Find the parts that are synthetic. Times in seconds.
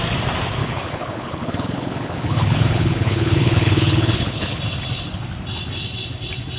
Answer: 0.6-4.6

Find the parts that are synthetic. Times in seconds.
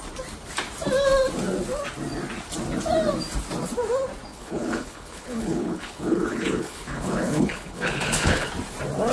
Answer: 4.3-8.5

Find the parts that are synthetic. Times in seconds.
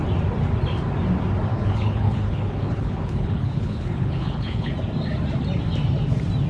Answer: 1.5-4.7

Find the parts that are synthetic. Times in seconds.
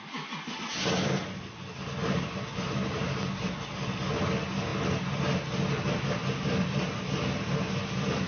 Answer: none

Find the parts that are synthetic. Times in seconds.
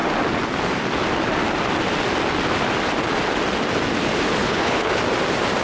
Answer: 4.4-5.0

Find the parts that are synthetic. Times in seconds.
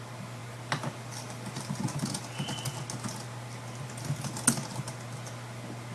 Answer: none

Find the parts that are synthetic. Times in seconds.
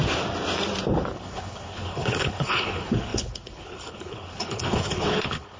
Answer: 1.1-5.6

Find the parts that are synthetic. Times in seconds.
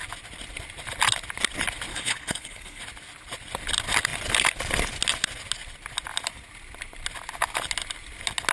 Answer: 1.9-2.8